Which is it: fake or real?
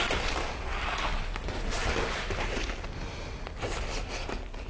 real